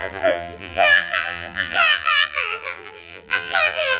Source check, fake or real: fake